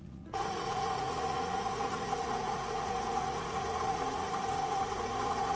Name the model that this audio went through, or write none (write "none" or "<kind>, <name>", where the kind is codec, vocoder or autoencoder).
vocoder, Vocos